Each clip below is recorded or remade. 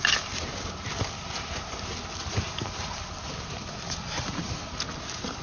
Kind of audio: recorded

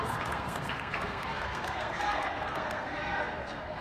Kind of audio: remade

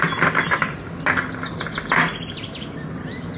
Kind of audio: recorded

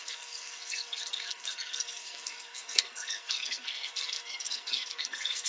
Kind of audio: remade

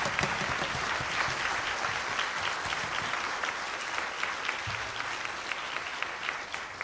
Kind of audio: recorded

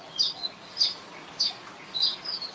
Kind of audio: recorded